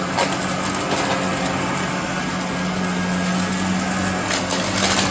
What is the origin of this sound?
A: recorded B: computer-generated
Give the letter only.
A